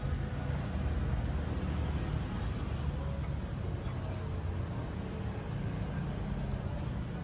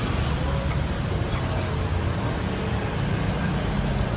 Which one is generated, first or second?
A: second